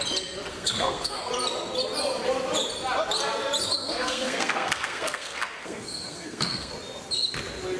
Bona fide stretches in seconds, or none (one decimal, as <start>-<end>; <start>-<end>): 0.0-0.5; 1.3-3.8; 6.7-7.8